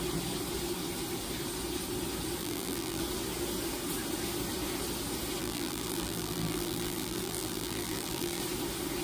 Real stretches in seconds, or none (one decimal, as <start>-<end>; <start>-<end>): 0.0-2.4; 3.0-5.4; 8.4-9.0